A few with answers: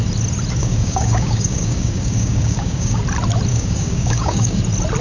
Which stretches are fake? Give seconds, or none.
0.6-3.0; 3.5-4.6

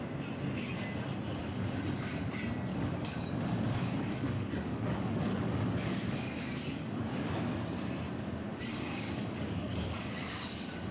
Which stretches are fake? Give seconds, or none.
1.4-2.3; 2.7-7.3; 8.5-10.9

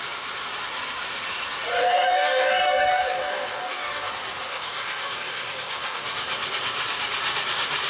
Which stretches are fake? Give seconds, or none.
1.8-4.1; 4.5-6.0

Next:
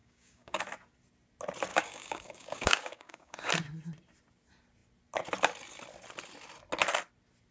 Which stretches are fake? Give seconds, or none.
0.0-0.6; 1.7-3.5